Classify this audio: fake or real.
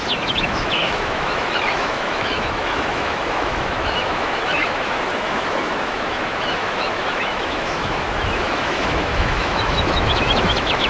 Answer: fake